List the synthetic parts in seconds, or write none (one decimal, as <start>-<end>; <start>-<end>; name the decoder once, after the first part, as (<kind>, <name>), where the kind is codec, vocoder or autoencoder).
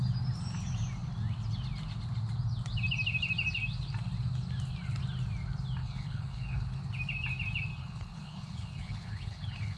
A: 5.8-6.8 (codec, HILCodec); 7.7-9.8